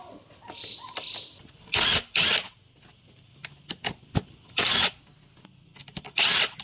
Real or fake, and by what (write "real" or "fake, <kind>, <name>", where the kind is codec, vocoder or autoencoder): real